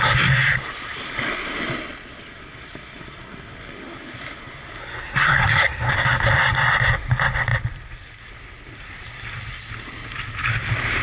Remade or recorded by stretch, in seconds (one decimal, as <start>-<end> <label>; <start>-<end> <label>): 0.0-4.8 recorded; 4.8-5.9 remade; 5.9-11.0 recorded